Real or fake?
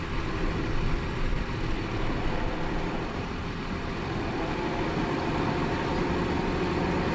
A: real